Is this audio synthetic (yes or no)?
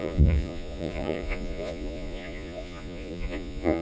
yes